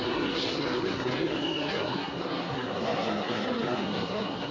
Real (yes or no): no